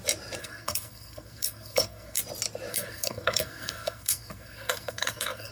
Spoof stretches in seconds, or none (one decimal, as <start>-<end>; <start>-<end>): 0.4-2.2; 2.7-5.5